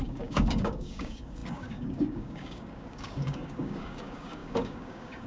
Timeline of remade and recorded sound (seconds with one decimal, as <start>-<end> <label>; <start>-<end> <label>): 0.0-5.3 remade